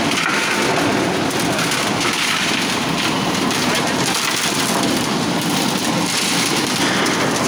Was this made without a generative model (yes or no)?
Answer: yes